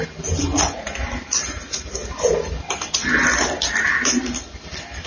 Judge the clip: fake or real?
real